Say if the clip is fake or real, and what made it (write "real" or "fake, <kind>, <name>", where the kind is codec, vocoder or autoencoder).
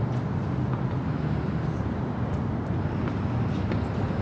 real